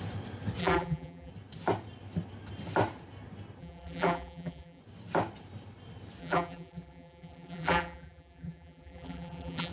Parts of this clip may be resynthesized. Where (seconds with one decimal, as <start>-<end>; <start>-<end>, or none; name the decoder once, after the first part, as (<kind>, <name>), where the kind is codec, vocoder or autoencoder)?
0.6-1.3 (vocoder, BigVGAN v2); 3.6-4.8; 6.2-9.7